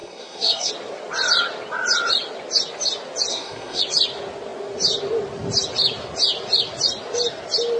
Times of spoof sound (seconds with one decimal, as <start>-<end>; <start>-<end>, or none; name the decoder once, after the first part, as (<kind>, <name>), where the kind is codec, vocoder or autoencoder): 0.0-0.7 (codec, SNAC); 3.3-3.8